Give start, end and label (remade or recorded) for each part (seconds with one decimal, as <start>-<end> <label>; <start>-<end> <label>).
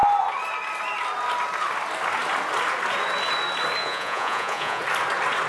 0.0-3.8 recorded; 3.8-4.8 remade; 4.8-5.5 recorded